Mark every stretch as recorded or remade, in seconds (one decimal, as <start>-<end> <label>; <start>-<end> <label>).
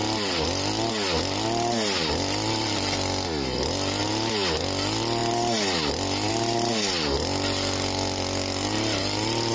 0.0-9.5 recorded